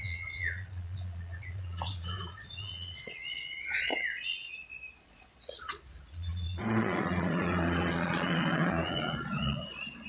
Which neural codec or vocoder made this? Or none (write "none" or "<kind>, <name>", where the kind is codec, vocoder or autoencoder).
vocoder, Vocos